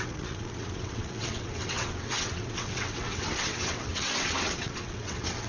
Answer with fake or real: fake